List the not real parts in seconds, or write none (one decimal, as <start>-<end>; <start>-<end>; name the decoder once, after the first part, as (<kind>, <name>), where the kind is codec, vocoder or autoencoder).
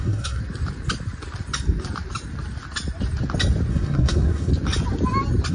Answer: 0.0-0.4 (codec, SNAC); 3.7-4.5